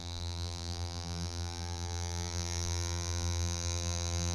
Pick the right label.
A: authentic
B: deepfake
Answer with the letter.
B